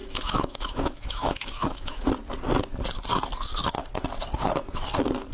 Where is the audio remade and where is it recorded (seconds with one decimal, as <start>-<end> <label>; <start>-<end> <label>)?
0.0-2.1 remade; 2.1-5.3 recorded